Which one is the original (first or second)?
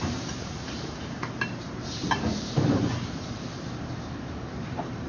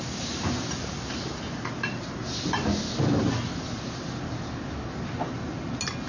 second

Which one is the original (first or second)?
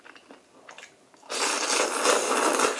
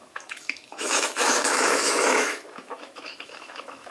first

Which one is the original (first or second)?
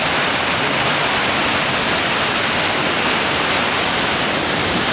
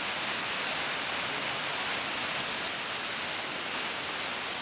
second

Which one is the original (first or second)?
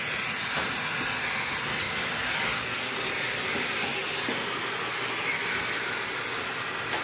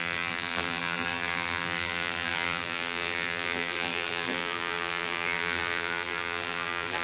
first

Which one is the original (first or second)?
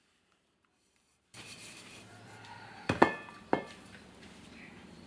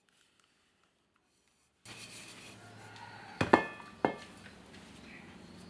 second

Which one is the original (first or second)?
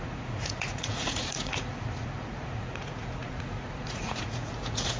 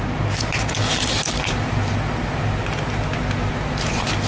second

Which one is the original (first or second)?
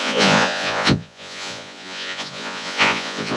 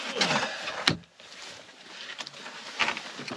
second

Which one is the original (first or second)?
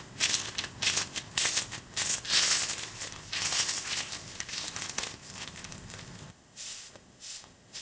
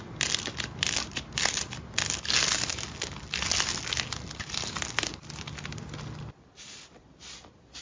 second